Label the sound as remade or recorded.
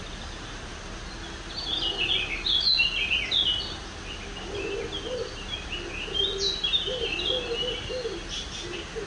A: recorded